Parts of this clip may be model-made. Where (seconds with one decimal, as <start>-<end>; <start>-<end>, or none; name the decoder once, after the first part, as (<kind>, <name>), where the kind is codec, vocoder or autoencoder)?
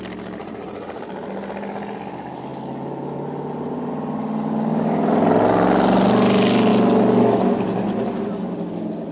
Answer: 0.4-1.0 (vocoder, Vocos)